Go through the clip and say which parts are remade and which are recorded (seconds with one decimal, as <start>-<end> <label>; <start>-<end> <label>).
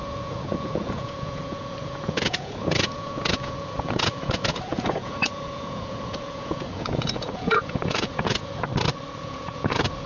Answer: 0.0-8.7 remade; 8.7-9.2 recorded; 9.2-10.1 remade